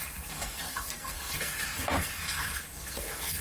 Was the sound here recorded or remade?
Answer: remade